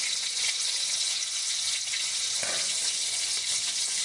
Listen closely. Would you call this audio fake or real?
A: fake